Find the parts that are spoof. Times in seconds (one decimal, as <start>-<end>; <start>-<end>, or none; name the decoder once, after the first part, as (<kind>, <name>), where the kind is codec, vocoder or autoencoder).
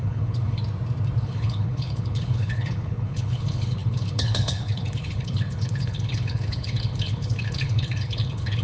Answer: 0.0-0.6 (codec, HILCodec); 1.2-8.6